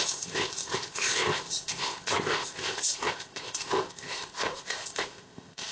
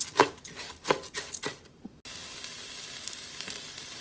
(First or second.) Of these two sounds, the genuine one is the second